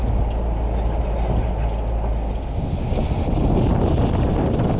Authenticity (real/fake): real